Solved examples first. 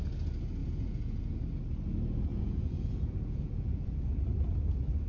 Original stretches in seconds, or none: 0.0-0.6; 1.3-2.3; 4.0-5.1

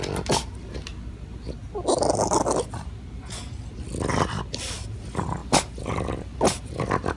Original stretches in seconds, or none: 0.0-5.4